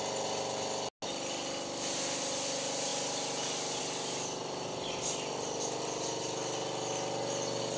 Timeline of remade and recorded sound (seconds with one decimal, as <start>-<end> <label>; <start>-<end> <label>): 0.0-7.8 recorded